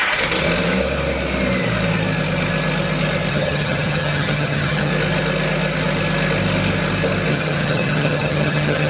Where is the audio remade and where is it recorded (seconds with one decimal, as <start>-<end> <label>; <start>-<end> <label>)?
0.0-3.3 recorded; 3.3-4.9 remade; 4.9-7.3 recorded; 7.3-8.9 remade